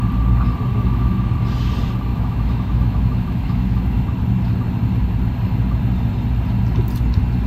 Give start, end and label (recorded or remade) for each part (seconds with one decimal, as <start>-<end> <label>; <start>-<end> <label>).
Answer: 0.0-0.7 recorded; 0.7-1.3 remade; 1.3-2.1 recorded; 2.1-4.0 remade; 4.0-7.5 recorded